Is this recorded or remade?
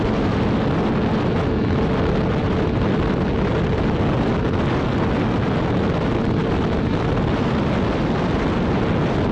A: recorded